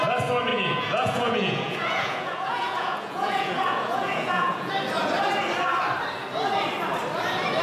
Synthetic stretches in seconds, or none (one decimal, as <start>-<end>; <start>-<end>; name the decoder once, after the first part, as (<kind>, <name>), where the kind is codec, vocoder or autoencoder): 0.5-4.7 (vocoder, Vocos)